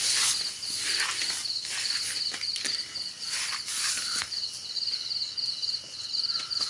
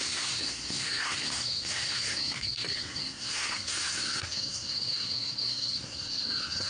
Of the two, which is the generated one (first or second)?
second